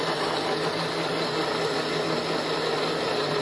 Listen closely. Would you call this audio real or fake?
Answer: real